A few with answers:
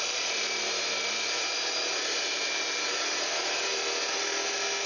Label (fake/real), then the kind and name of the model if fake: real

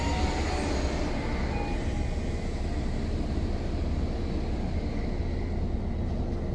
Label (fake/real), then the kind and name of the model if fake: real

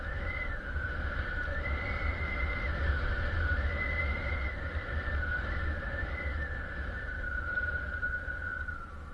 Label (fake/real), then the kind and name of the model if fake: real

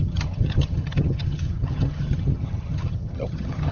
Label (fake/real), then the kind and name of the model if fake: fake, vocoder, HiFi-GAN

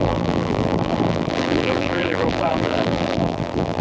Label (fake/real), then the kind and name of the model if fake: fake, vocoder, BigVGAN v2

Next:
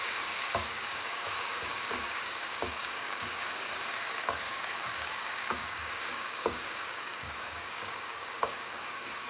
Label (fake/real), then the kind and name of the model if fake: fake, codec, DAC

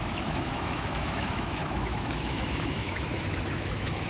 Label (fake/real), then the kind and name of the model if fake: fake, autoencoder, DAC-VAE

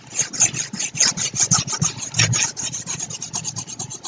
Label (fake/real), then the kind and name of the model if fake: fake, vocoder, BigVGAN v2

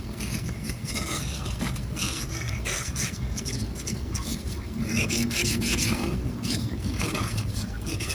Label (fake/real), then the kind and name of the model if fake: fake, codec, SNAC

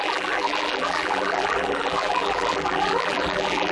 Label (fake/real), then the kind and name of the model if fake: fake, vocoder, BigVGAN v2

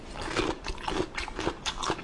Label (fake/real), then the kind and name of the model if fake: real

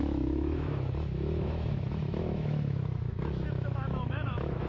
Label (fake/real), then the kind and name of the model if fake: fake, autoencoder, DAC-VAE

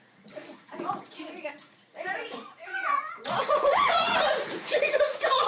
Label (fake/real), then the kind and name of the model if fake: fake, vocoder, Vocos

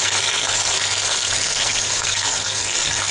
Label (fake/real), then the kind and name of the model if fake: fake, codec, SNAC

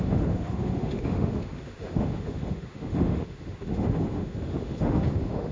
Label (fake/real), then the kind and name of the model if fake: fake, autoencoder, DAC-VAE